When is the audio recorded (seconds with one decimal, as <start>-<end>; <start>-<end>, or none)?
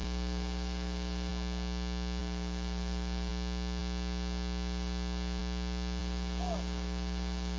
1.3-2.2; 3.3-6.0